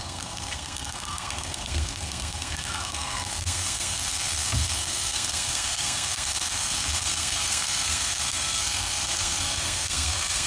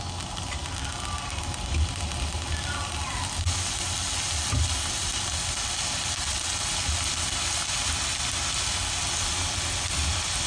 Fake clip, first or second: first